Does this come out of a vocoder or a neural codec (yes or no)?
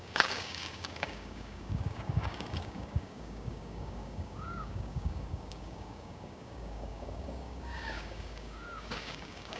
yes